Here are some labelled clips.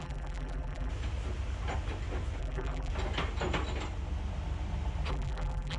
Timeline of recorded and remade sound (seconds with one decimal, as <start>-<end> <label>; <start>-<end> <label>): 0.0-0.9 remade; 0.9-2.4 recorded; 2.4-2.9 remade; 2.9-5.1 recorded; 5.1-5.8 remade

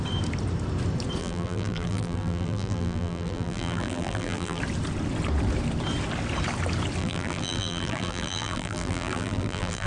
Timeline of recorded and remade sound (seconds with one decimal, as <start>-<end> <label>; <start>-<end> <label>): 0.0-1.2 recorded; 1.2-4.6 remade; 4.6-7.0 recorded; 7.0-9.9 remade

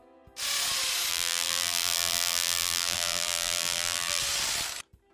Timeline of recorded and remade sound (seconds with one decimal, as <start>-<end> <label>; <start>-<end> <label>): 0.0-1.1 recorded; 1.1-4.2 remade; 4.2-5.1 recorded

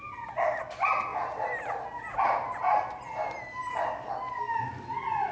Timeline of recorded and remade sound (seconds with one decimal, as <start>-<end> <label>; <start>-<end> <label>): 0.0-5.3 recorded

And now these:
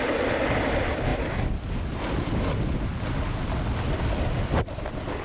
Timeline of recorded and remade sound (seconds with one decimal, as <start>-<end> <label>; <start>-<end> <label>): 0.0-2.9 recorded; 2.9-4.8 remade; 4.8-5.2 recorded

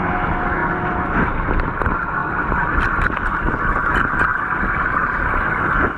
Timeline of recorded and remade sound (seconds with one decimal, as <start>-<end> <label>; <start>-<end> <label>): 0.0-2.2 recorded; 2.2-3.3 remade; 3.3-4.3 recorded; 4.3-6.0 remade

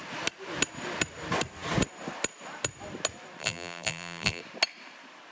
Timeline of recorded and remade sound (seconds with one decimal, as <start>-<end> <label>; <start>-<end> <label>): 0.0-3.4 recorded; 3.4-4.4 remade; 4.4-5.3 recorded

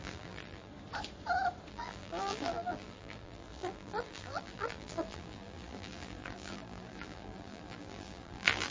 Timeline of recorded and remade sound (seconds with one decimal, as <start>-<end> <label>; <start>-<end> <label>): 0.0-0.7 remade; 0.7-1.7 recorded; 1.7-8.7 remade